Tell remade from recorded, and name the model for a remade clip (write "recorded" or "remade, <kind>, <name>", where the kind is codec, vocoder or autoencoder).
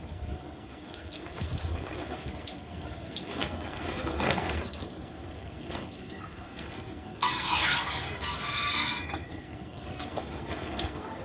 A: remade, codec, SNAC